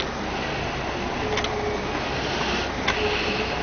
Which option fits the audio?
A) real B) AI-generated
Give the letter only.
A